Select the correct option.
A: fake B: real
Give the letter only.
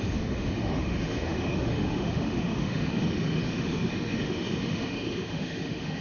A